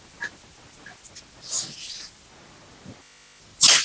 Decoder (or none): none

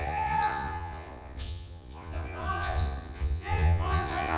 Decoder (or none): vocoder, Vocos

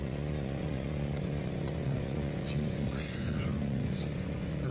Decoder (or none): vocoder, Vocos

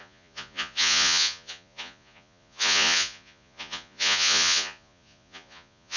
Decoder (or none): vocoder, Vocos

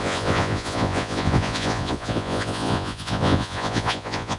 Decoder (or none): vocoder, Vocos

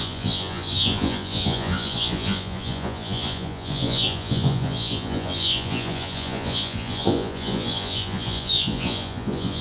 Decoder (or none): vocoder, Vocos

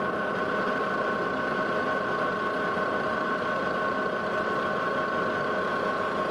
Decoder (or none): none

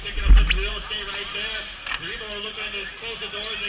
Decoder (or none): none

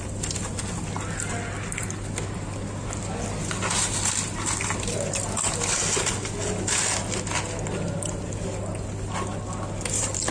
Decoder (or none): none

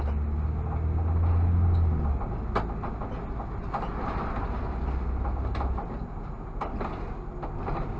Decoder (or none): none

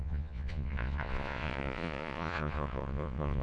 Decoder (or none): vocoder, Vocos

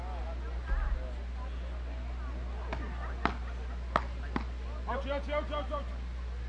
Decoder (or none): none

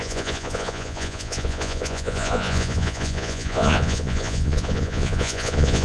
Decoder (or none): vocoder, Vocos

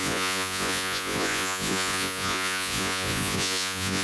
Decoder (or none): vocoder, Vocos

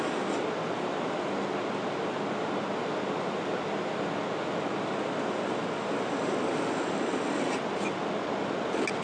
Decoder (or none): none